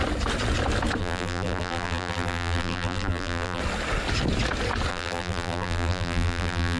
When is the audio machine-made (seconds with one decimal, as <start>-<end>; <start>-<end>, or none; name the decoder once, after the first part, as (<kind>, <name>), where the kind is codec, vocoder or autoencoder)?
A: 1.0-3.6 (vocoder, BigVGAN v2); 4.9-6.8